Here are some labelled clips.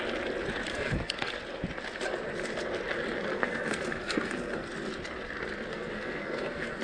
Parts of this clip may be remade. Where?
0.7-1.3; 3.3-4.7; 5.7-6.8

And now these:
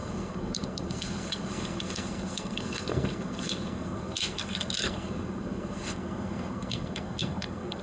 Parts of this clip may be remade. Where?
0.0-7.8

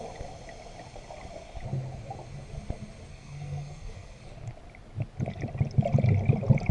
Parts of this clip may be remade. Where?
3.1-4.2